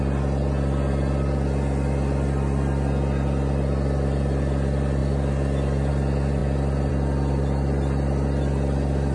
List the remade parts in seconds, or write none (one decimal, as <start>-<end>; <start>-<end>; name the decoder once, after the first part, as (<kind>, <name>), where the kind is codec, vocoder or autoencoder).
none